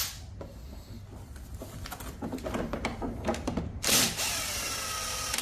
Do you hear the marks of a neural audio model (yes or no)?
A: no